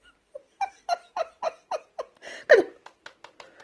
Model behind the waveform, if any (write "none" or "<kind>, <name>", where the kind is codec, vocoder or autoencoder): none